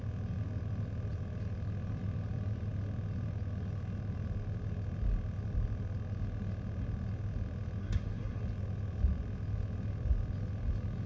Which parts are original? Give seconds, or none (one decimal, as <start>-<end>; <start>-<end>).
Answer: 0.0-7.8; 8.4-11.1